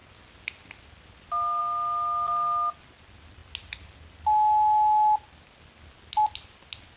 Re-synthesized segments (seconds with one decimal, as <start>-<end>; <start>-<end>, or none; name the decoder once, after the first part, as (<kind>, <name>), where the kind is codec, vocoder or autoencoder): none